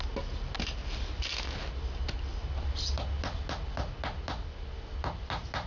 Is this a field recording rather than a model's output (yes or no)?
yes